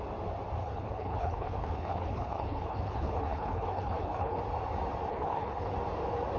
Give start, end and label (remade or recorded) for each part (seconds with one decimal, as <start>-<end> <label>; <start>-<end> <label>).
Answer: 0.0-0.6 recorded; 0.6-4.4 remade; 4.4-5.1 recorded; 5.1-5.7 remade; 5.7-6.4 recorded